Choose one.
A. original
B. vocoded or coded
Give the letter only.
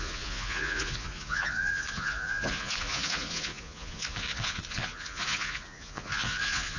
B